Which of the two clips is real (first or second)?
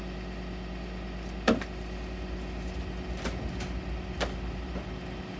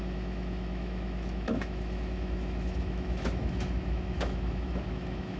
first